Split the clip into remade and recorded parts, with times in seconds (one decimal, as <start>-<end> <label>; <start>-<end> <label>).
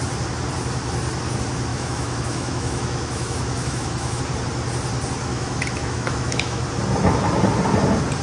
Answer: 0.0-1.7 recorded; 1.7-4.2 remade; 4.2-5.3 recorded; 5.3-6.6 remade; 6.6-8.2 recorded